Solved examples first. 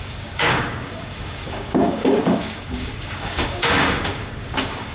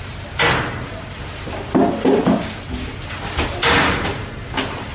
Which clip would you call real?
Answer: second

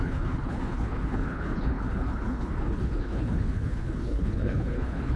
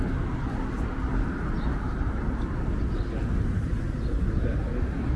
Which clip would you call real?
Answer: second